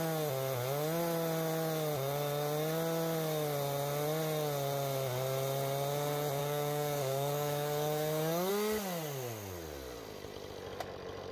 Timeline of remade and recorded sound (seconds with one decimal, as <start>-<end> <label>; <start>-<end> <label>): 0.0-6.4 recorded; 6.4-8.5 remade; 8.5-11.3 recorded